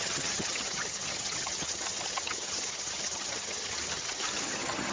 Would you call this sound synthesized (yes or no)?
yes